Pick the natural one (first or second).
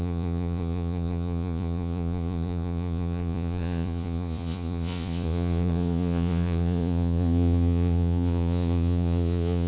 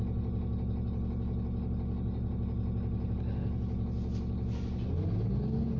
second